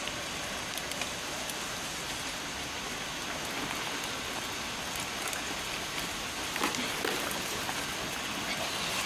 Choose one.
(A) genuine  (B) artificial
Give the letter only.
A